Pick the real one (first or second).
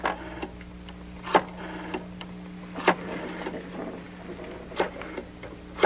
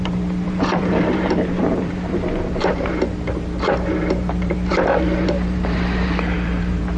first